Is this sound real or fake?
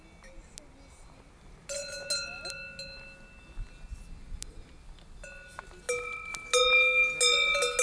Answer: real